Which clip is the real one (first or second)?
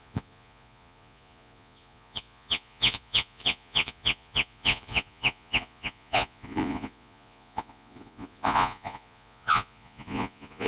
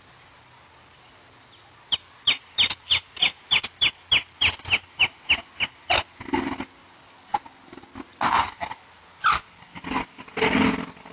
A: second